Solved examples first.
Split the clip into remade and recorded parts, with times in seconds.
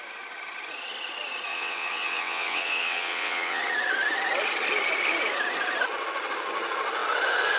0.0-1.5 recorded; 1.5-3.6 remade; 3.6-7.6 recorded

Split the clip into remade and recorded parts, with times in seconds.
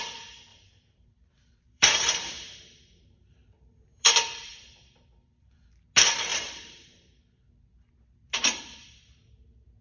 0.0-0.5 recorded; 0.5-5.0 remade; 5.0-6.3 recorded; 6.3-7.2 remade; 7.2-9.8 recorded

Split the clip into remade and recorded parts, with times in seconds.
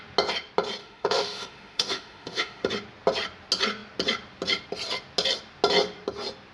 0.0-0.8 recorded; 0.8-2.7 remade; 2.7-6.5 recorded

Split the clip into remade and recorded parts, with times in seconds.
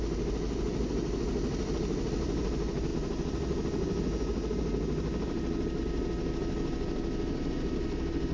0.0-8.3 recorded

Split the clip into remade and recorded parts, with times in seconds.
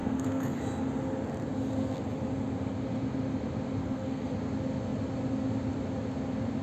0.0-0.6 remade; 0.6-3.8 recorded; 3.8-4.3 remade; 4.3-6.6 recorded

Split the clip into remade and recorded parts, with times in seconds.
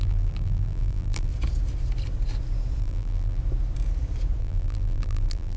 0.0-1.3 remade; 1.3-2.8 recorded; 2.8-3.4 remade; 3.4-4.4 recorded; 4.4-5.6 remade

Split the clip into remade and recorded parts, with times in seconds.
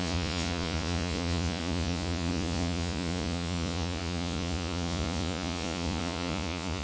0.0-6.8 remade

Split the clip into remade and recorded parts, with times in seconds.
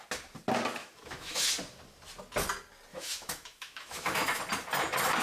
0.0-0.8 recorded; 0.8-1.5 remade; 1.5-2.9 recorded; 2.9-4.4 remade; 4.4-5.2 recorded